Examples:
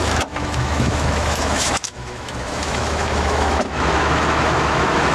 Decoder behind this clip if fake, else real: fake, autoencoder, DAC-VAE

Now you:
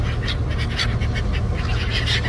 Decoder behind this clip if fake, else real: real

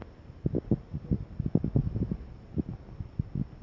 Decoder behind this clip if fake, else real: real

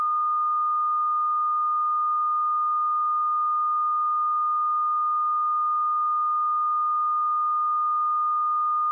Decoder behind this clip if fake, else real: real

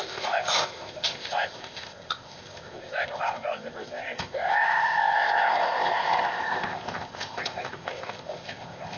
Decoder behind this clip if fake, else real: fake, codec, ZipCodec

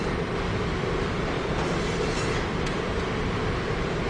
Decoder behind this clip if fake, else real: fake, vocoder, BigVGAN v2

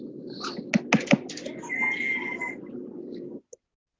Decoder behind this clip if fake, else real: real